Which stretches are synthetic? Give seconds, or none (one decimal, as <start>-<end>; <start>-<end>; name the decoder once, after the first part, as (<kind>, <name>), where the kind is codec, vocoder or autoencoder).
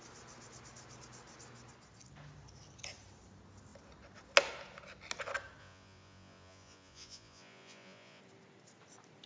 5.6-8.2 (vocoder, Vocos)